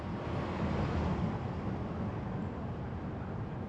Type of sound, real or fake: real